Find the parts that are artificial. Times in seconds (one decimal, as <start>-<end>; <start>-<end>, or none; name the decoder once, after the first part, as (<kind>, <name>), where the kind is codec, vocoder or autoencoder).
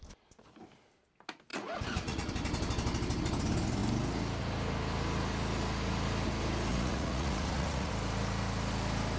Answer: 1.5-2.3 (vocoder, Vocos); 6.7-7.9